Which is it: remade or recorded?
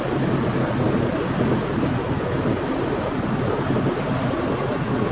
recorded